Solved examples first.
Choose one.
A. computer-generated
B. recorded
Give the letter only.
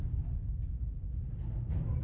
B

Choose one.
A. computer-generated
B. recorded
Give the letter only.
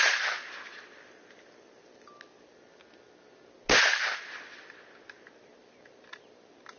B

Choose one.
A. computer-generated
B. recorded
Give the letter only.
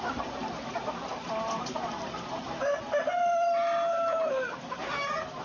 B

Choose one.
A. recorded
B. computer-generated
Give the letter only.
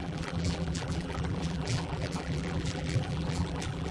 B